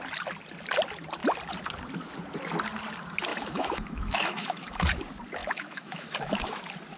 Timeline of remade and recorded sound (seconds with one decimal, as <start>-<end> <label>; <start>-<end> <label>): 0.0-3.3 recorded; 3.3-4.8 remade; 4.8-5.4 recorded; 5.4-6.6 remade; 6.6-7.0 recorded